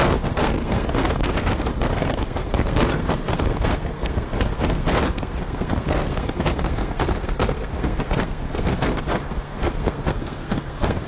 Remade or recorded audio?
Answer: remade